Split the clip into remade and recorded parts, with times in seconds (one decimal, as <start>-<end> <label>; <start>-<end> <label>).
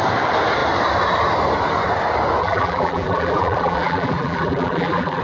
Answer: 0.0-2.4 recorded; 2.4-5.2 remade